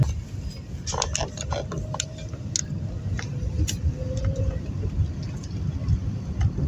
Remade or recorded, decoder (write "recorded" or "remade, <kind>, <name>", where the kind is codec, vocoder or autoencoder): recorded